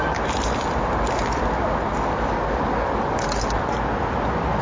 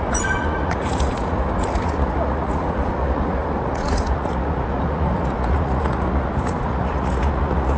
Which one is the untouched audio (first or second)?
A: first